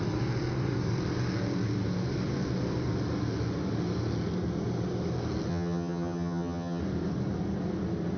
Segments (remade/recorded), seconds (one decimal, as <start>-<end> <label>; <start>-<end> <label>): 0.0-5.5 recorded; 5.5-6.8 remade; 6.8-8.2 recorded